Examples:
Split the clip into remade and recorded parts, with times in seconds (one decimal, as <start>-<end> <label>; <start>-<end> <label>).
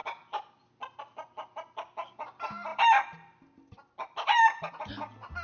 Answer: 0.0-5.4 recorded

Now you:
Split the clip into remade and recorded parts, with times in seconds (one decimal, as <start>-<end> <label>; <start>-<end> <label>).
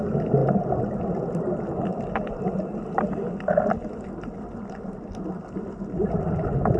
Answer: 0.0-6.8 recorded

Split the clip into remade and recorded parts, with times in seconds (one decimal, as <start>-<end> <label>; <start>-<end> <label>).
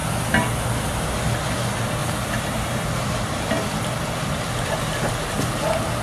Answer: 0.0-6.0 recorded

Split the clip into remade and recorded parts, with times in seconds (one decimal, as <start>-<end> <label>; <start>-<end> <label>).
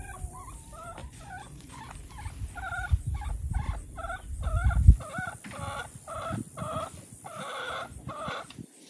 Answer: 0.0-1.0 recorded; 1.0-1.8 remade; 1.8-8.9 recorded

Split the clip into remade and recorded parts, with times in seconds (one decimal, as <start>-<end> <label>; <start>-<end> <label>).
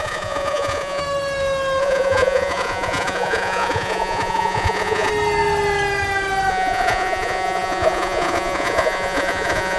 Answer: 0.0-1.0 remade; 1.0-1.8 recorded; 1.8-5.1 remade; 5.1-6.5 recorded; 6.5-9.8 remade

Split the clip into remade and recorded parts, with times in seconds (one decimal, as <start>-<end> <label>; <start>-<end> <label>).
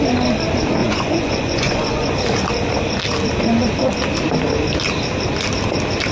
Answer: 0.0-0.8 recorded; 0.8-2.1 remade; 2.1-6.1 recorded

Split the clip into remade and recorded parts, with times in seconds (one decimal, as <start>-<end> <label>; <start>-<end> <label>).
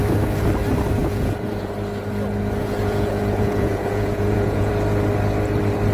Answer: 0.0-1.0 recorded; 1.0-1.7 remade; 1.7-2.6 recorded; 2.6-4.7 remade; 4.7-5.9 recorded